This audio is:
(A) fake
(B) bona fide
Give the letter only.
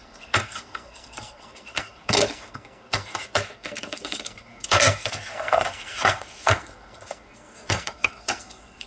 A